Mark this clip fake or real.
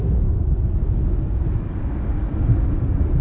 real